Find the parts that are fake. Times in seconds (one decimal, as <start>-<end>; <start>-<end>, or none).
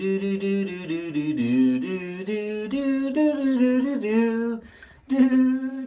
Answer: 1.4-4.6